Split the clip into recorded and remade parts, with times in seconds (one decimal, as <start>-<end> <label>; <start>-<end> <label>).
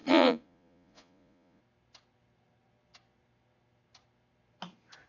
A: 0.0-1.6 remade; 1.6-5.1 recorded